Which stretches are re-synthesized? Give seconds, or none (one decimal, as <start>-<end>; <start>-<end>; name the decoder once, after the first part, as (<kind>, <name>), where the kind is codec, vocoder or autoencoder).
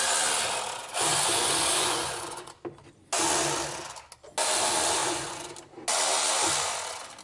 0.8-2.5 (vocoder, Vocos); 5.0-5.5